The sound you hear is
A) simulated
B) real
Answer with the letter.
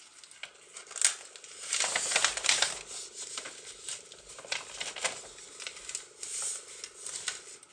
B